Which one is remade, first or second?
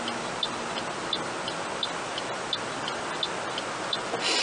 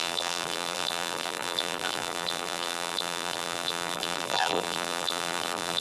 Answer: second